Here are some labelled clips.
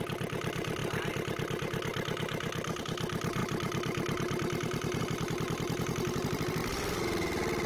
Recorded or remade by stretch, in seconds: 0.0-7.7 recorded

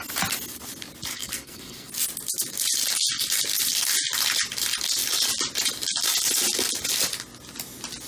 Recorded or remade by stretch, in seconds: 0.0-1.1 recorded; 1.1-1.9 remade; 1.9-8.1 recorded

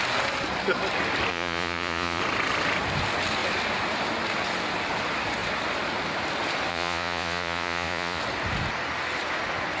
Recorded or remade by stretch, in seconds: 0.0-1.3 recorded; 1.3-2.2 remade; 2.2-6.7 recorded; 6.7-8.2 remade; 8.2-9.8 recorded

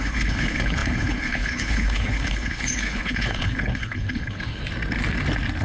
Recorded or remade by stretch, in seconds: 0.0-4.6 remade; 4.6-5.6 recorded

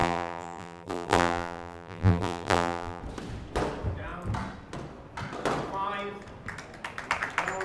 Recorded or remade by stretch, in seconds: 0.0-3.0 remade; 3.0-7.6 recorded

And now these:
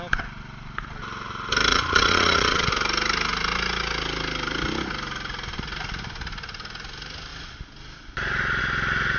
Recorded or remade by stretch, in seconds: 0.0-1.7 recorded; 1.7-2.7 remade; 2.7-9.2 recorded

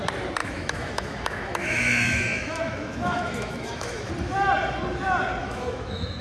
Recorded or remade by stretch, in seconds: 0.0-0.4 recorded; 0.4-4.1 remade; 4.1-5.4 recorded; 5.4-6.2 remade

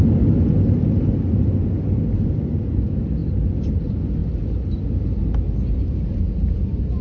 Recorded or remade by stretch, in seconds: 0.0-7.0 recorded